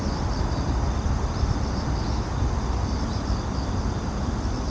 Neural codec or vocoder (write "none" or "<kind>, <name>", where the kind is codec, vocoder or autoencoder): none